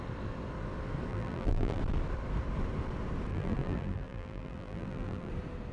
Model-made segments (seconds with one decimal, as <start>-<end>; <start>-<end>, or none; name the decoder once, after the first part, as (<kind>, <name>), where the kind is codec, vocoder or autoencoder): 1.1-1.8 (vocoder, BigVGAN v2); 3.3-5.3